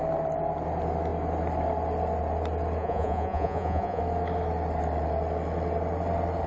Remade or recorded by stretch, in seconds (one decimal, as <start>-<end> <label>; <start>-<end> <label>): 0.0-2.8 recorded; 2.8-4.0 remade; 4.0-6.5 recorded